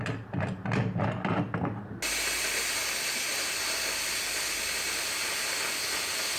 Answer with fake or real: real